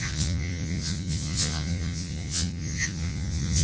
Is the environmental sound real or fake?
fake